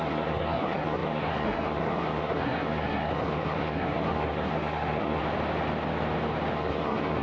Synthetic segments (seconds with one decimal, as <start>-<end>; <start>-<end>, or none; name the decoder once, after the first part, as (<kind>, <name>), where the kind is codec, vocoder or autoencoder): 0.0-5.2 (codec, SNAC); 6.5-7.2